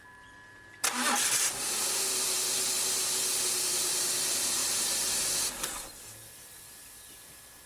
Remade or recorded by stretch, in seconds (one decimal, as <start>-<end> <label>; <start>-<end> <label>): 0.0-4.6 recorded; 4.6-5.2 remade; 5.2-7.7 recorded